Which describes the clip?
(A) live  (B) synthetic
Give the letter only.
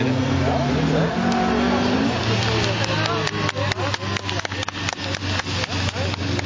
A